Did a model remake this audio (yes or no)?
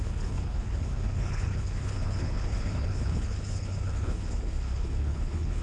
yes